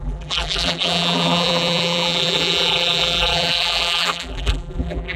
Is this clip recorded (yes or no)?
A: no